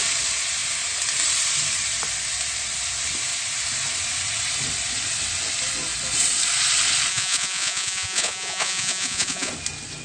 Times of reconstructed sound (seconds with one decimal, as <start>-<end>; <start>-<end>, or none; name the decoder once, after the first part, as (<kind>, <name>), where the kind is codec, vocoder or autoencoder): 7.1-9.5 (vocoder, Vocos)